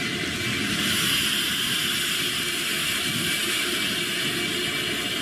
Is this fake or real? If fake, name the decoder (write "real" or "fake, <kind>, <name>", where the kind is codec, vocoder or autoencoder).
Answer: real